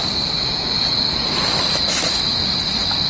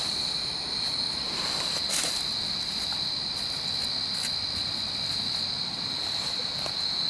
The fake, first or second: second